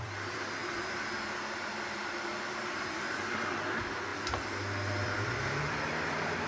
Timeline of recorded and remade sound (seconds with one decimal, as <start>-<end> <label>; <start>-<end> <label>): 0.0-0.6 remade; 0.6-1.7 recorded; 1.7-2.3 remade; 2.3-3.5 recorded; 3.5-6.5 remade